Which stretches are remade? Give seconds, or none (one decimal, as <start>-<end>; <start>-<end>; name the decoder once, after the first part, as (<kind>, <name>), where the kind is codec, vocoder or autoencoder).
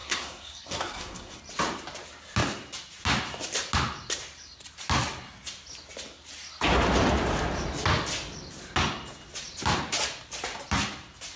0.0-1.4 (codec, SNAC)